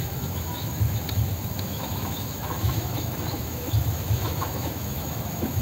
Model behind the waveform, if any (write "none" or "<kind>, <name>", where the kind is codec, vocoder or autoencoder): autoencoder, DAC-VAE